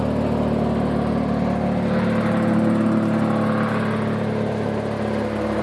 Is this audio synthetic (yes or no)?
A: no